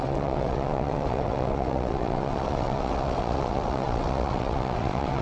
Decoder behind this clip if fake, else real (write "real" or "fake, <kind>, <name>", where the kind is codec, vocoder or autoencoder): fake, vocoder, WaveNeXt